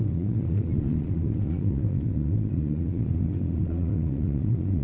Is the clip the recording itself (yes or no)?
no